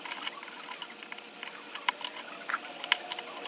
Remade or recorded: recorded